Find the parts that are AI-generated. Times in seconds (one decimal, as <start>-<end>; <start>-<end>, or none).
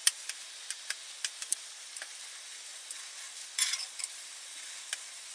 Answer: none